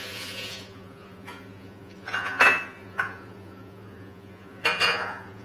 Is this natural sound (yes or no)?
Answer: no